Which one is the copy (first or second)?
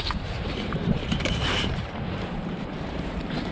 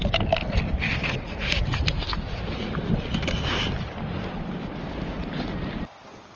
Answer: first